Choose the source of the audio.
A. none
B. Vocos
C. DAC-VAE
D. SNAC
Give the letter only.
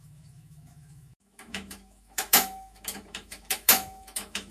C